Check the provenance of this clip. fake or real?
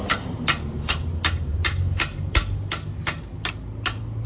real